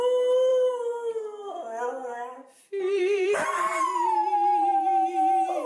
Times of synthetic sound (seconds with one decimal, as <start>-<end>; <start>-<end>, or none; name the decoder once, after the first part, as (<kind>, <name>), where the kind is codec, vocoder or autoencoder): 0.5-1.5 (vocoder, BigVGAN v2); 2.1-5.7